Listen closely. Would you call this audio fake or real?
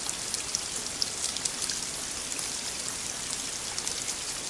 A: real